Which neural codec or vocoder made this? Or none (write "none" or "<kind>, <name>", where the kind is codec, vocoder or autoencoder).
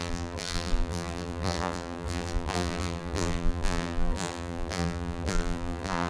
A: vocoder, BigVGAN v2